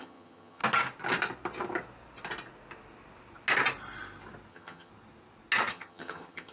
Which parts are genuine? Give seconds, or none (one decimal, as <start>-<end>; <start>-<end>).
0.6-4.5; 4.9-5.7